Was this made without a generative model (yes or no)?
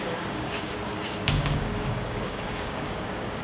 no